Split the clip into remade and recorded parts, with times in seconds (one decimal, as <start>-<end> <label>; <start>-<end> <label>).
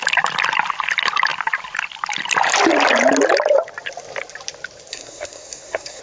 0.0-4.9 recorded; 4.9-6.0 remade